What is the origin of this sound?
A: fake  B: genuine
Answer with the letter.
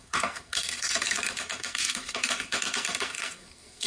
A